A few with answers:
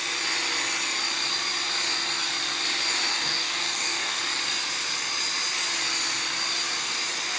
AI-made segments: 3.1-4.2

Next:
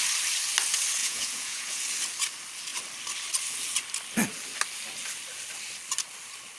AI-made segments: 1.0-1.8